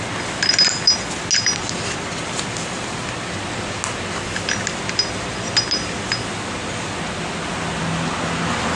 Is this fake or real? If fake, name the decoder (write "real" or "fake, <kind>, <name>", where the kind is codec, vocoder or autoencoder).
real